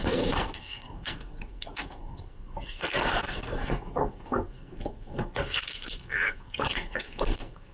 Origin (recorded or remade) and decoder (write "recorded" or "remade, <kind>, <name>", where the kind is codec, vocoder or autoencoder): remade, codec, SNAC